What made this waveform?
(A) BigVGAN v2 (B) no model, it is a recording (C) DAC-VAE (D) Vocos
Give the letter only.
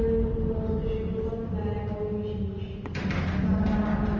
B